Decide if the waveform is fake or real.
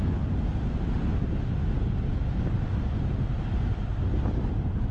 real